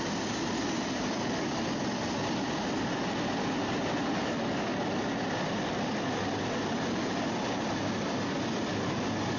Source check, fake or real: real